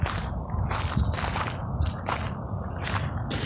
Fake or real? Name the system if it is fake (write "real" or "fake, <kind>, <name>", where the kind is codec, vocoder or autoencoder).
real